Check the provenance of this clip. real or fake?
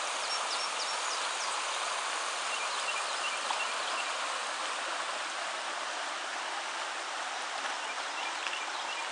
real